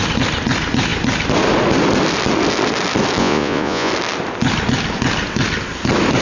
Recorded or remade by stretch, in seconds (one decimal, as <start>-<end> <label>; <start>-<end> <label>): 0.0-3.2 recorded; 3.2-3.9 remade; 3.9-6.2 recorded